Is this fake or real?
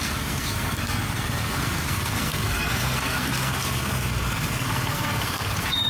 fake